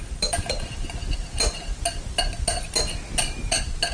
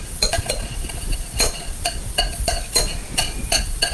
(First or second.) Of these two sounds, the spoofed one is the second